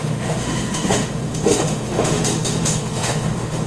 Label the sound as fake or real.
fake